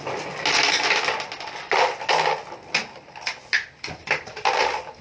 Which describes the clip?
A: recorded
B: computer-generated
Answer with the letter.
A